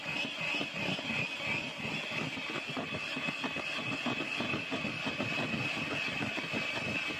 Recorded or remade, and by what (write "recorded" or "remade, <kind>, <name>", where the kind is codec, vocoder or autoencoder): recorded